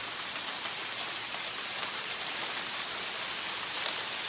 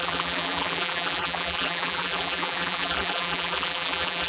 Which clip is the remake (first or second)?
second